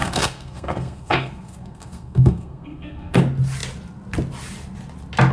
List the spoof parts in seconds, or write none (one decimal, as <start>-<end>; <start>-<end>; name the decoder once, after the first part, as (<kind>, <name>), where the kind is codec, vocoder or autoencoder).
0.0-3.2 (codec, SNAC)